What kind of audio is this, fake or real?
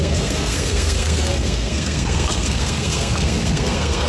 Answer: fake